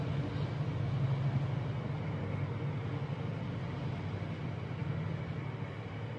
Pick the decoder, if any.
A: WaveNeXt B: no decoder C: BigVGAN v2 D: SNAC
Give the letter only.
B